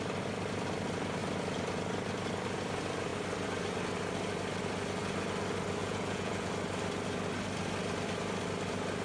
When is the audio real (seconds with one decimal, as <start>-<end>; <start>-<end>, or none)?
0.0-5.8; 6.5-9.0